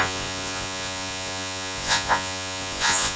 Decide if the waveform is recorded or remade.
remade